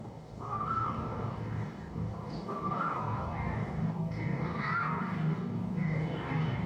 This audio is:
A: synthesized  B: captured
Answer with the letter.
A